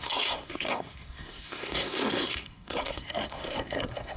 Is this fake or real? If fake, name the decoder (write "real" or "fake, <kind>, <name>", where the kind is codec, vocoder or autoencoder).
fake, codec, SNAC